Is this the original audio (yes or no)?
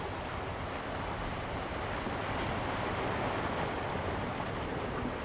yes